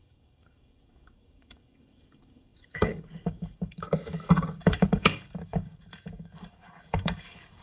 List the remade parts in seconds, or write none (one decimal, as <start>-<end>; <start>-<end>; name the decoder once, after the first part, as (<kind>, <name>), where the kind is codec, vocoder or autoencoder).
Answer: 0.0-7.6 (codec, DAC)